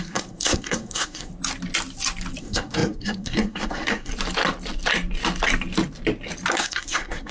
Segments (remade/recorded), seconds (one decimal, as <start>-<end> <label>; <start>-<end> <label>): 0.0-1.3 remade; 1.3-2.4 recorded; 2.4-4.1 remade; 4.1-6.5 recorded; 6.5-7.3 remade